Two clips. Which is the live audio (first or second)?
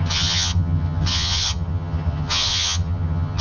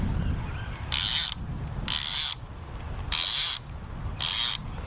second